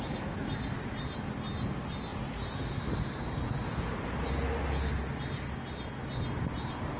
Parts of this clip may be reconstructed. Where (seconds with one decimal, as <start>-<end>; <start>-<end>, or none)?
none